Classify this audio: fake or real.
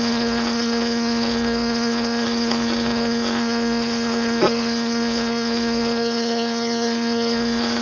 fake